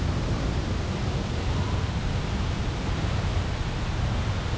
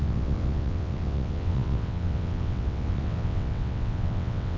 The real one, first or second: first